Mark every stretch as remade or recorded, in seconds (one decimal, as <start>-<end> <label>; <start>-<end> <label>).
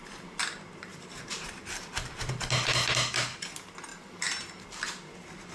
0.0-0.9 recorded; 0.9-2.3 remade; 2.3-5.5 recorded